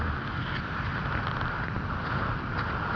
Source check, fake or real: real